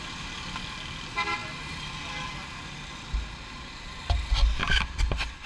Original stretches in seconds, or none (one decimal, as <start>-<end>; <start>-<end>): 0.0-4.6; 5.1-5.5